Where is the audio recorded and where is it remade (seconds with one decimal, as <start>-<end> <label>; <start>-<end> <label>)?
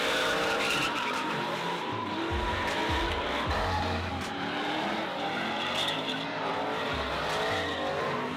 0.0-2.8 remade; 2.8-3.5 recorded; 3.5-6.5 remade; 6.5-8.0 recorded; 8.0-8.4 remade